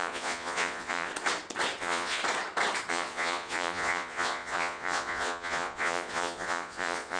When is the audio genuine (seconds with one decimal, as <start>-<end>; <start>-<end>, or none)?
1.1-1.8; 2.2-2.9